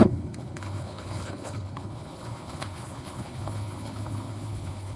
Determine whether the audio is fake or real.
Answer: fake